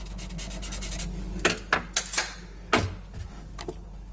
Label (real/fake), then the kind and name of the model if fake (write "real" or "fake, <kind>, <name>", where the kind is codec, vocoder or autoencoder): real